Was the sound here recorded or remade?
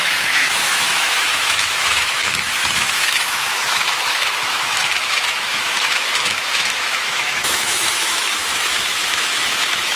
remade